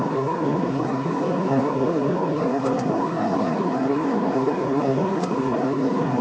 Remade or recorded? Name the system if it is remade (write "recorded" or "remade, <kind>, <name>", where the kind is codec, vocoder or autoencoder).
remade, codec, SNAC